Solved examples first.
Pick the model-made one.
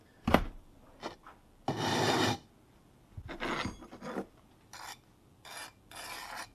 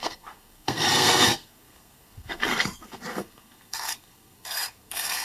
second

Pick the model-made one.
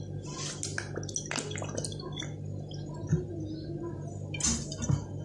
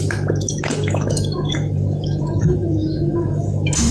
second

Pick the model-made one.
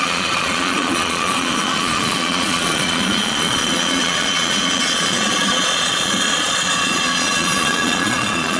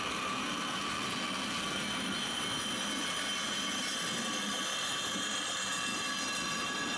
first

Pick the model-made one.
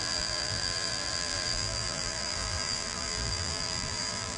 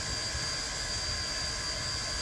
first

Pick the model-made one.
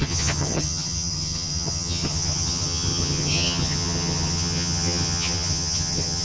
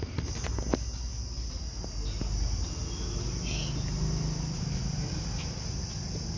first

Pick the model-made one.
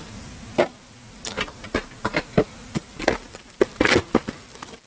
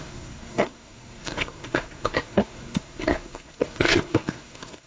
second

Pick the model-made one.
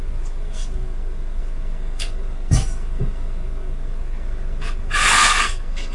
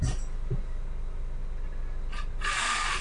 first